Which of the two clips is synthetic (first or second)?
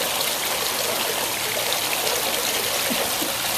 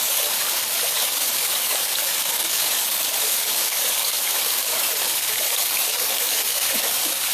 second